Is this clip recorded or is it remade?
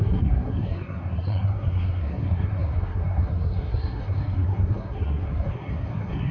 remade